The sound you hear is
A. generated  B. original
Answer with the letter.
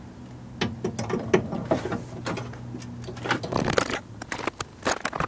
B